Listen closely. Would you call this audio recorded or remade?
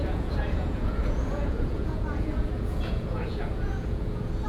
remade